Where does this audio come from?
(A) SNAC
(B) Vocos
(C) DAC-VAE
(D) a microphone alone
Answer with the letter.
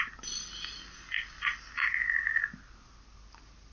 D